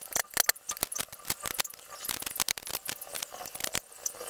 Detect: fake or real real